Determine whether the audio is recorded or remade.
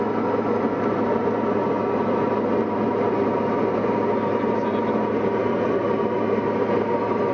recorded